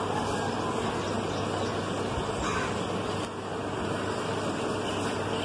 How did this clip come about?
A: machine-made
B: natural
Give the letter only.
B